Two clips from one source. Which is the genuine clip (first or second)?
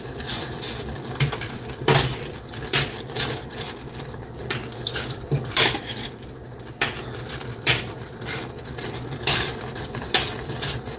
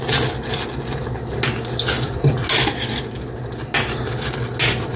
second